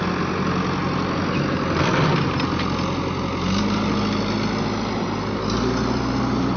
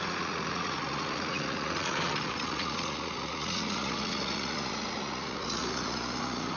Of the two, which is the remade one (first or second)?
second